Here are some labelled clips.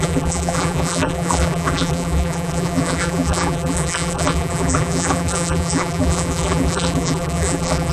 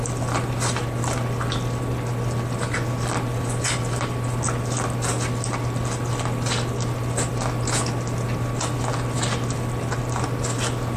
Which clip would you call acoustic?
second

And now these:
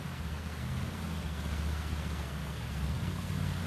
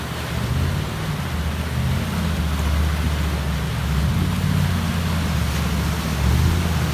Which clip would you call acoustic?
second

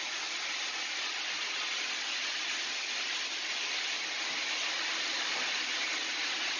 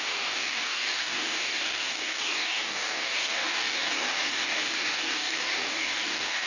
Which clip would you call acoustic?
first